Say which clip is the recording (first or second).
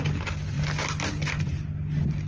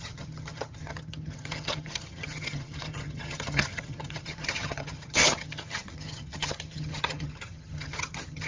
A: first